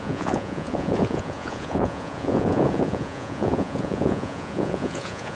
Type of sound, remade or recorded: remade